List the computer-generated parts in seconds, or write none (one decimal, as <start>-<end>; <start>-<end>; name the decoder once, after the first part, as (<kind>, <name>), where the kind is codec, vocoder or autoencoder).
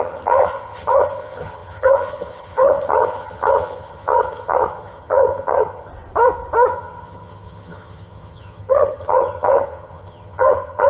0.0-5.9 (vocoder, HiFi-GAN); 6.7-10.9